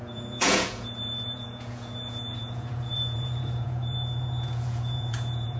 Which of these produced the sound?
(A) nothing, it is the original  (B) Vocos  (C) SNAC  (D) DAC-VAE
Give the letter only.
B